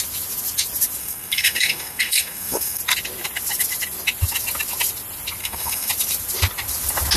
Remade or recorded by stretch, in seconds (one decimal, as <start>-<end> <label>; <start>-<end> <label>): 0.0-1.0 recorded; 1.0-2.8 remade; 2.8-5.4 recorded; 5.4-5.9 remade; 5.9-7.2 recorded